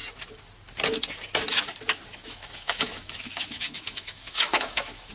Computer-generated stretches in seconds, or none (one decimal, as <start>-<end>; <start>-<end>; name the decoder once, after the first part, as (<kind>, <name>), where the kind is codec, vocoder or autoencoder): 2.1-5.1 (autoencoder, DAC-VAE)